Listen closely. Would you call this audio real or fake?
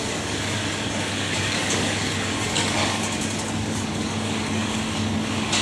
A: fake